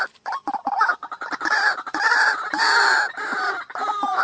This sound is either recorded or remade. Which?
recorded